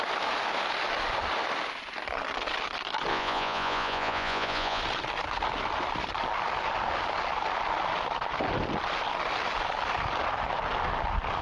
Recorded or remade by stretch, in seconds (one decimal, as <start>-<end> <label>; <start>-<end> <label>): 0.0-3.1 recorded; 3.1-4.8 remade; 4.8-11.4 recorded